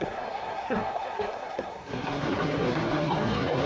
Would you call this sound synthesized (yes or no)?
yes